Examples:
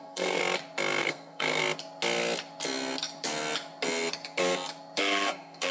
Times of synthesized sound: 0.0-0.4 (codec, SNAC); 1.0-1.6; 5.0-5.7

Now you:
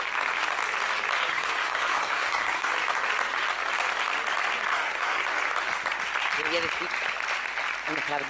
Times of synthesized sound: 1.3-2.7 (codec, SNAC); 4.7-5.2

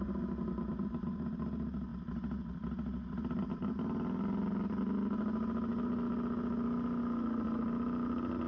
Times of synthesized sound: none

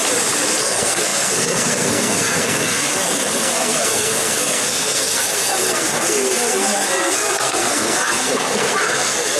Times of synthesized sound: 0.6-9.4 (codec, SNAC)

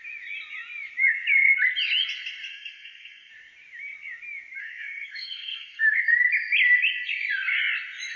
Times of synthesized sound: 2.5-3.3 (codec, SNAC); 4.6-6.0

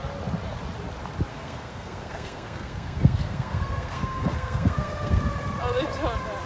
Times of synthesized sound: 1.3-5.2 (codec, SNAC)

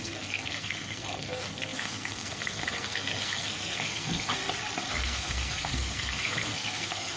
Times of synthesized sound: 0.0-4.4 (codec, SNAC); 4.9-7.2